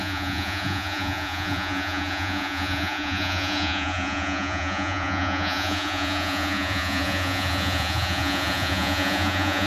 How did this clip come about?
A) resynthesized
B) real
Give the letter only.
A